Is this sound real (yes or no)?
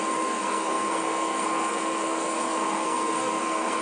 no